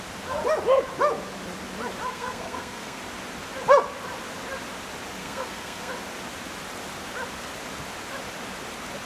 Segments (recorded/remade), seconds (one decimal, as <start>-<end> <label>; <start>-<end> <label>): 0.0-2.1 recorded; 2.1-3.0 remade; 3.0-5.2 recorded; 5.2-5.9 remade; 5.9-9.1 recorded